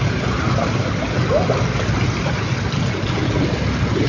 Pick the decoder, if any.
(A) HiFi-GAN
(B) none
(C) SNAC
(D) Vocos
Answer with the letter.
B